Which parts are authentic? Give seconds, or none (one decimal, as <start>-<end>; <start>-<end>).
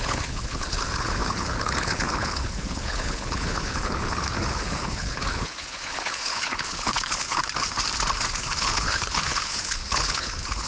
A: 7.4-8.3